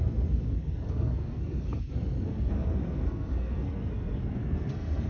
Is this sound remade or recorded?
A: remade